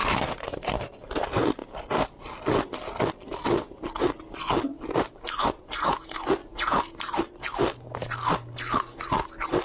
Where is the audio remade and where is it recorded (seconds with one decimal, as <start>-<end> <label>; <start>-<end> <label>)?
0.0-1.0 remade; 1.0-6.4 recorded; 6.4-7.2 remade; 7.2-9.6 recorded